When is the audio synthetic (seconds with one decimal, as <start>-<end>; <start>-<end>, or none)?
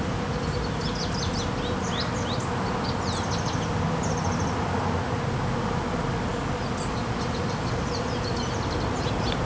none